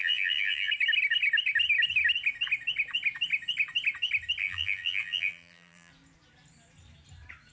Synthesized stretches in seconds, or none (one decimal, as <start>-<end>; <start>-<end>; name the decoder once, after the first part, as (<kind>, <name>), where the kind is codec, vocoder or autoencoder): 0.0-0.7 (vocoder, BigVGAN v2); 4.4-5.9

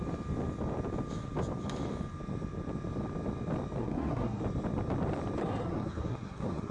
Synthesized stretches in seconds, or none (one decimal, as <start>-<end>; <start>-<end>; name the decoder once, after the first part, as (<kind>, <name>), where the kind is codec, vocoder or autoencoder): 3.8-4.4 (codec, SNAC); 5.4-6.7

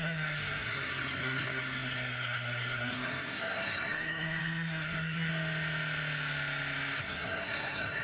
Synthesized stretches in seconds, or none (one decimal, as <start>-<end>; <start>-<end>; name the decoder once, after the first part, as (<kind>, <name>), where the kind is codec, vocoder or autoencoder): 0.0-5.3 (codec, SNAC); 7.0-8.0

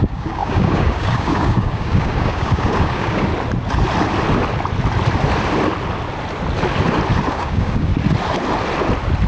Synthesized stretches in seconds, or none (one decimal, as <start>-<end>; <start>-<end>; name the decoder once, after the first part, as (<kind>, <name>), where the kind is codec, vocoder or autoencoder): 0.0-3.3 (codec, DAC); 7.3-7.9

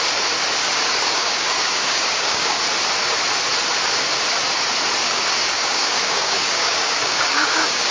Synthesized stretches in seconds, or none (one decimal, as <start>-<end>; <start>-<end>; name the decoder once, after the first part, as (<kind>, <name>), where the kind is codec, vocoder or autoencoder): 0.6-2.6 (codec, DAC); 5.0-7.9

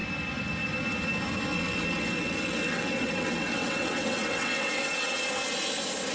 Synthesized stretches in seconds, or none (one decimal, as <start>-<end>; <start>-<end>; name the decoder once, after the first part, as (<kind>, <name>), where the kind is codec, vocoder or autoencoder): 1.5-5.2 (vocoder, WaveNeXt)